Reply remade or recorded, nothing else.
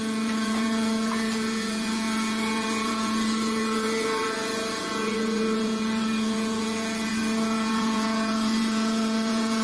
remade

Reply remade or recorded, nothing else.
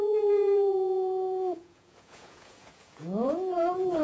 remade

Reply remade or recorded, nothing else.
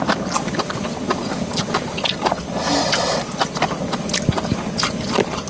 recorded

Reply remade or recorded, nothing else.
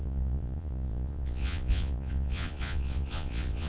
remade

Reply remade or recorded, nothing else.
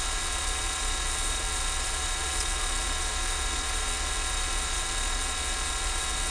remade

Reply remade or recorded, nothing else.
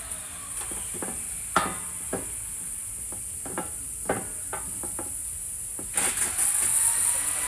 recorded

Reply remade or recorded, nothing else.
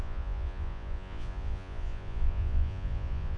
remade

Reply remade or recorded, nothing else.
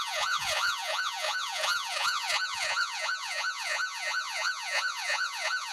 remade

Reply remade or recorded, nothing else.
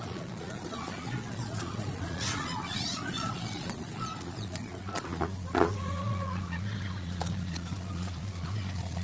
remade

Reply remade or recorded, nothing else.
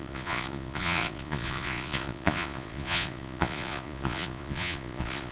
remade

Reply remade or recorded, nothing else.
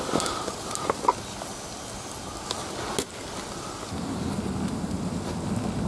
recorded